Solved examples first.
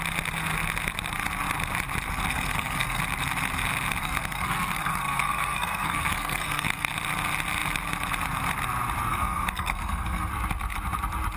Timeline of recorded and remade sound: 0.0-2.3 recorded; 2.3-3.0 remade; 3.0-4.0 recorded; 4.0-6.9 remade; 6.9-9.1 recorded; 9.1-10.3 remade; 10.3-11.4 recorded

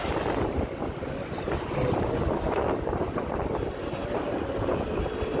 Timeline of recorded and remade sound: 0.0-5.4 recorded

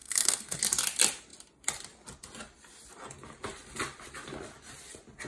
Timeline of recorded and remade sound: 0.0-0.6 remade; 0.6-5.3 recorded